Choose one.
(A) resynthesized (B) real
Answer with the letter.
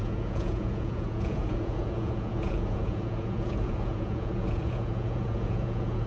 A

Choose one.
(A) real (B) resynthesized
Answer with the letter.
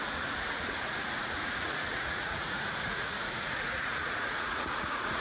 B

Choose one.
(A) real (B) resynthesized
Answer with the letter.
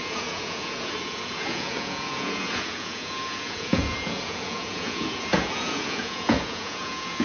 B